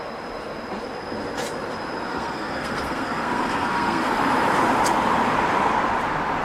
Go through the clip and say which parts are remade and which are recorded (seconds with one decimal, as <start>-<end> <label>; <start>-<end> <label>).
0.0-2.1 recorded; 2.1-4.2 remade; 4.2-6.4 recorded